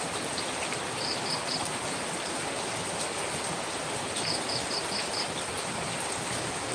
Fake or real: real